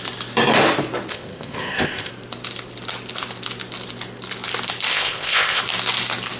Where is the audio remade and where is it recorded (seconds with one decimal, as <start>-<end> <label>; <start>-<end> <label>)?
0.0-1.1 recorded; 1.1-2.1 remade; 2.1-4.9 recorded; 4.9-5.6 remade; 5.6-6.4 recorded